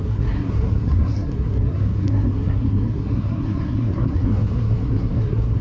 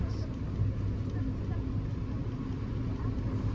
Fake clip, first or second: first